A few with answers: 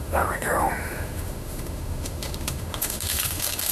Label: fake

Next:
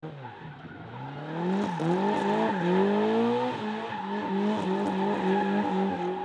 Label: real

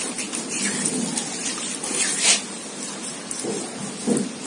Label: real